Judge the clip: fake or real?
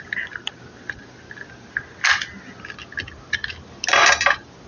real